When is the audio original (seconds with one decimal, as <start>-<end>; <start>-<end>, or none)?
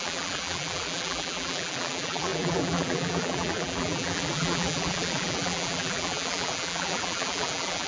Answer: none